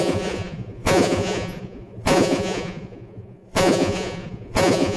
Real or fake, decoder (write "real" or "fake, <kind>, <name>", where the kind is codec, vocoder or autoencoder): fake, vocoder, Vocos